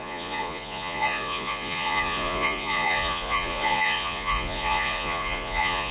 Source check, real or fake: fake